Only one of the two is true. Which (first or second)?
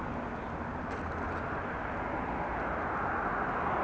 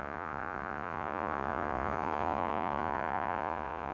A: first